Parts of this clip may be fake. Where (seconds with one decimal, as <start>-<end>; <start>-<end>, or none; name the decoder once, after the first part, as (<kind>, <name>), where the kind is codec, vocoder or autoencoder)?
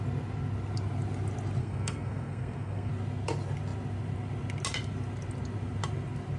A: 1.6-2.9 (codec, SNAC)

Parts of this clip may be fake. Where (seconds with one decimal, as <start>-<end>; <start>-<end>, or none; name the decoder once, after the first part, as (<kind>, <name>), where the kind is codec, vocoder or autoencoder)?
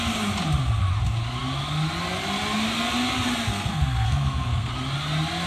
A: 3.5-4.7 (codec, SNAC)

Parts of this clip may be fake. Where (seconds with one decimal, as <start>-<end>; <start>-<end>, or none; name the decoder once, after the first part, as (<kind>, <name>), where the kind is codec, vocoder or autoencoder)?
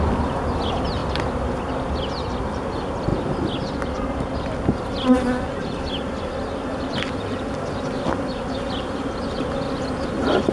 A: none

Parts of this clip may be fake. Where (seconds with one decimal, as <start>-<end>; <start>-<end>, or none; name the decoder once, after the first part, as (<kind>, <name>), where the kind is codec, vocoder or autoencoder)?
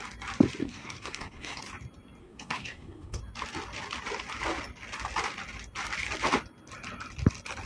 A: 0.6-1.6 (codec, SNAC); 2.2-3.2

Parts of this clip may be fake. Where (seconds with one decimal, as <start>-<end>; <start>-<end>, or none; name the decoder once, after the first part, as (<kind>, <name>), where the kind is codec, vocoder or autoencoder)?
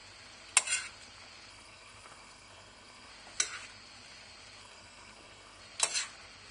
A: 1.5-3.1 (codec, SNAC); 4.6-5.6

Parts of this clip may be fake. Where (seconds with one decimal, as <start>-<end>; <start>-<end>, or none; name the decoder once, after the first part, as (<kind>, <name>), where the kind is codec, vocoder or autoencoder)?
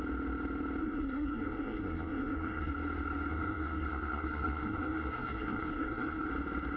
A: 0.8-2.7 (codec, SNAC); 3.3-6.3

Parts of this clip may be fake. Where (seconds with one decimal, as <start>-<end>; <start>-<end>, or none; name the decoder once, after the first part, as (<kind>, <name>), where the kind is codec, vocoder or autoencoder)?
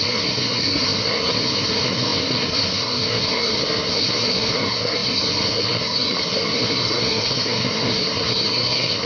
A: 0.0-9.1 (codec, SNAC)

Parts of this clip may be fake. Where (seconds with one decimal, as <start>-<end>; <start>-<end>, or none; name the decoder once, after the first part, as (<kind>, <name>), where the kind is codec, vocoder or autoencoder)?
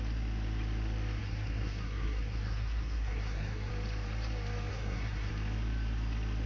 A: 1.2-3.7 (codec, SNAC); 4.7-5.3